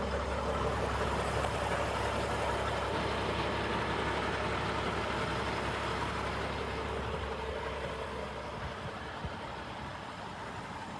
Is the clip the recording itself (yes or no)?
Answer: yes